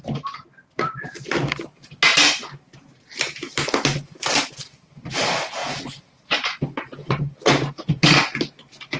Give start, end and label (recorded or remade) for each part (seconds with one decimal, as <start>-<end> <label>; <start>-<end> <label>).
0.0-9.0 recorded